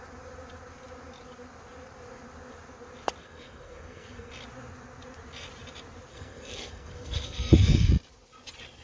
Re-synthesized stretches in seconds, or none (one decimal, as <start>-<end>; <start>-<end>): 3.2-4.3; 6.1-7.9